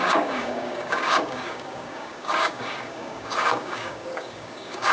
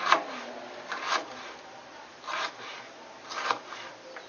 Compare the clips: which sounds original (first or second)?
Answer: second